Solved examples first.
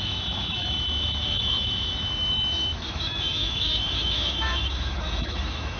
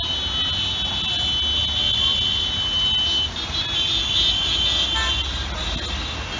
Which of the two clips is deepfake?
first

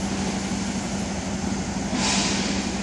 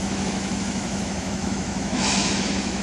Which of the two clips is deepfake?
second